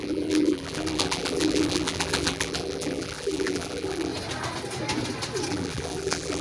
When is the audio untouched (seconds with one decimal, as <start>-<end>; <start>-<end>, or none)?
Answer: 4.1-5.5